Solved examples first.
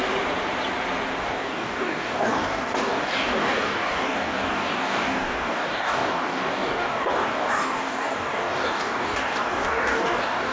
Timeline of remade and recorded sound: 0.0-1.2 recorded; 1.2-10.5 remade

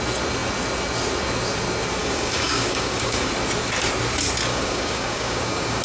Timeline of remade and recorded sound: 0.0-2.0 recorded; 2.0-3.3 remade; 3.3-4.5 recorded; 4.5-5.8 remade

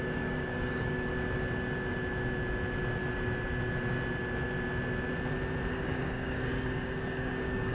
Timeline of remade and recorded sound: 0.0-1.1 remade; 1.1-5.7 recorded; 5.7-7.7 remade

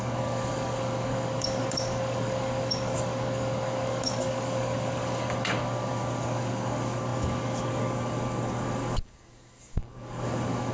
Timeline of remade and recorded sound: 0.0-10.7 remade

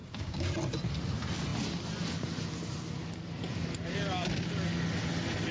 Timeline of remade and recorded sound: 0.0-0.5 remade; 0.5-5.5 recorded

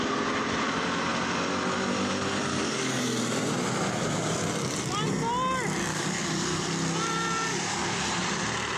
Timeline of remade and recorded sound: 0.0-2.5 recorded; 2.5-3.0 remade; 3.0-5.9 recorded; 5.9-6.7 remade; 6.7-7.5 recorded; 7.5-8.0 remade; 8.0-8.8 recorded

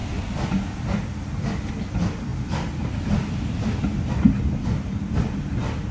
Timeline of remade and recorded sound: 0.0-5.9 recorded

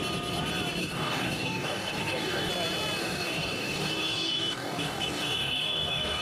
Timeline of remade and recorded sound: 0.0-0.8 recorded; 0.8-2.5 remade; 2.5-3.0 recorded; 3.0-6.2 remade